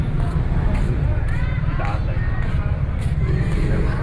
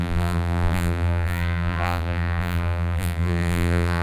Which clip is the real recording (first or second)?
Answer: first